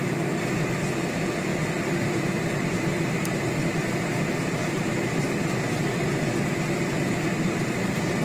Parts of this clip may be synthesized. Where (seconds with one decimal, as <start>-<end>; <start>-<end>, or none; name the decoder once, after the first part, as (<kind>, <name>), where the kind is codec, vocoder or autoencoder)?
none